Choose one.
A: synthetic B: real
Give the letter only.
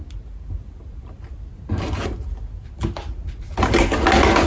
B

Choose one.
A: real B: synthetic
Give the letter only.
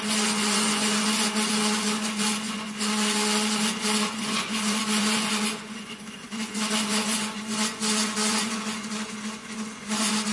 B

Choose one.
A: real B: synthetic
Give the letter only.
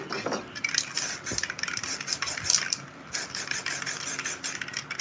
A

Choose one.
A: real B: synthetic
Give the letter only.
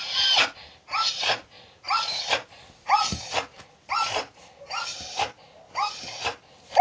A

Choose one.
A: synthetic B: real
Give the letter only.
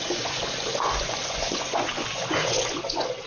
A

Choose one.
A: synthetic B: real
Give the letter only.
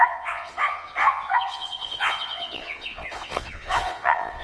A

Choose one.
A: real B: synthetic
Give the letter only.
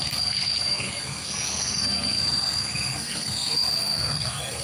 B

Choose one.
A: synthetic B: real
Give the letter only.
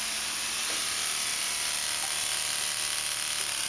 B